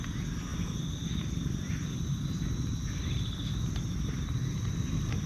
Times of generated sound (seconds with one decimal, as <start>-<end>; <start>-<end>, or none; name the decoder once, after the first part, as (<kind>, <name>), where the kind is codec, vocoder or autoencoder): none